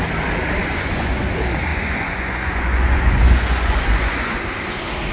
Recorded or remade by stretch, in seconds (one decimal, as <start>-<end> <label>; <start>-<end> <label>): 0.0-0.6 recorded; 0.6-1.2 remade; 1.2-1.7 recorded; 1.7-4.4 remade; 4.4-5.1 recorded